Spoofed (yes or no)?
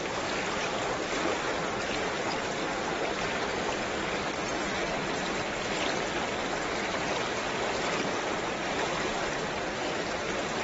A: no